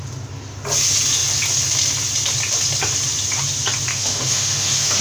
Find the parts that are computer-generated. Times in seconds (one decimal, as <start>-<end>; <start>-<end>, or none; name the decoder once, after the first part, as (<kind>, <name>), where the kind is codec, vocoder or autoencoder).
3.9-5.0 (autoencoder, DAC-VAE)